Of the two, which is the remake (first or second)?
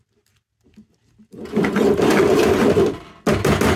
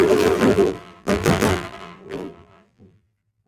second